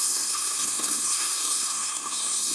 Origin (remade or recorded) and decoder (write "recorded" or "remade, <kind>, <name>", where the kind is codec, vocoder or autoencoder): remade, codec, SNAC